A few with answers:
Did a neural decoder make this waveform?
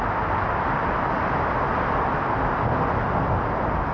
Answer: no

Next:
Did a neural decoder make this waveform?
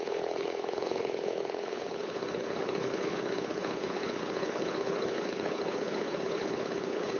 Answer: yes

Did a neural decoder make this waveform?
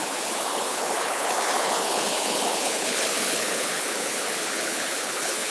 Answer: yes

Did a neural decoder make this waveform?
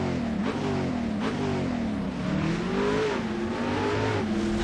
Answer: no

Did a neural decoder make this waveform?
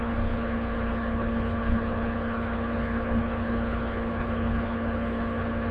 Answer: yes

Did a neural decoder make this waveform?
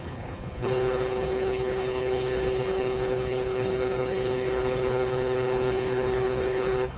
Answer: yes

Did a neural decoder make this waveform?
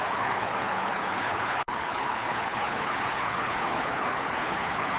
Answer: yes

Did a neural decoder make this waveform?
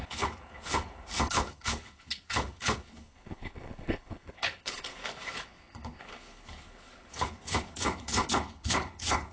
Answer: yes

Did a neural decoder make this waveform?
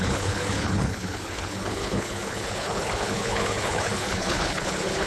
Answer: yes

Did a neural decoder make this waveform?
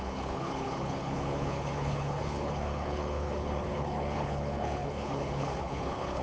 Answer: yes